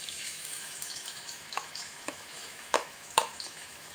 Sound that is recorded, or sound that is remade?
remade